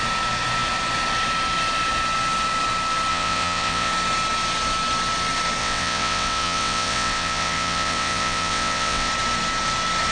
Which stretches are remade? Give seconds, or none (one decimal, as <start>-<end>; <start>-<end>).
3.1-3.9; 5.6-9.1